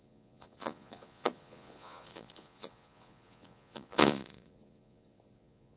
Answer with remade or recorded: remade